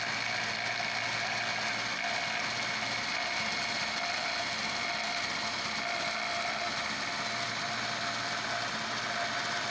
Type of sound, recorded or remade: recorded